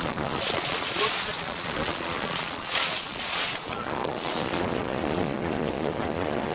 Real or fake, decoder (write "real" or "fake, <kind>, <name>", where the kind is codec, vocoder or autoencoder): fake, vocoder, Vocos